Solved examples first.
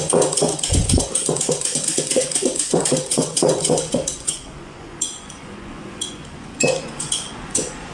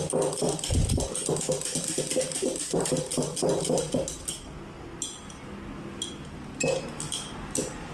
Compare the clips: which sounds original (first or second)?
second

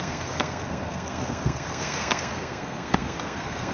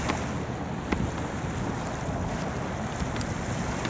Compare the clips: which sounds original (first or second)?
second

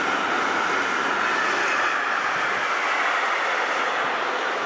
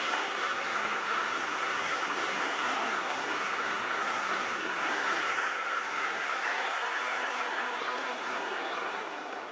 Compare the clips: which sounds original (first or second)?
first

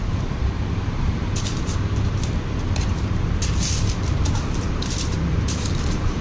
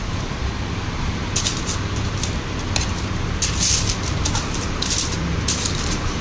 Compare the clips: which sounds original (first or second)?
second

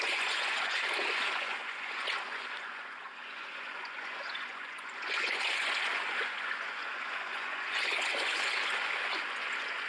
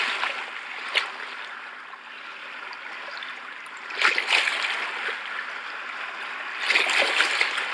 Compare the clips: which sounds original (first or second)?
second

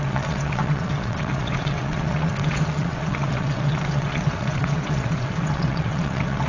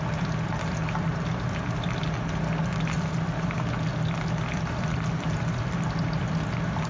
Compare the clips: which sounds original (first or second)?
second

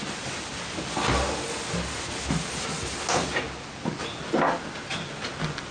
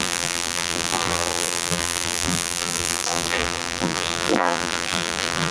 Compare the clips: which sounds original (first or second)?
first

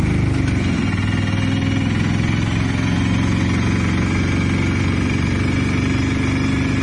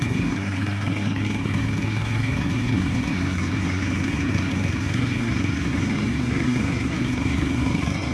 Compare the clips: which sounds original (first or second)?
first